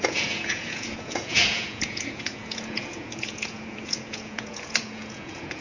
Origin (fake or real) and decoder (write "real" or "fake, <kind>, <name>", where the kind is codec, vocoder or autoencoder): fake, vocoder, Vocos